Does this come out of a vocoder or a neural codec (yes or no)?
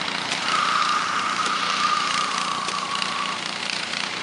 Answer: yes